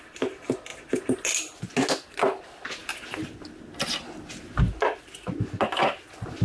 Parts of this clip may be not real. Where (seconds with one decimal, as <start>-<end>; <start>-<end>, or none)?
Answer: none